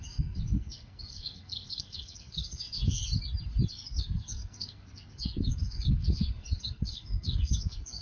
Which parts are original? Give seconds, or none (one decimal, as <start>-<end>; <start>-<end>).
3.0-3.7